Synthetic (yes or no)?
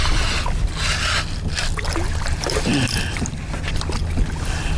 no